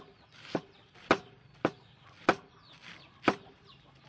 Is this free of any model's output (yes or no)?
yes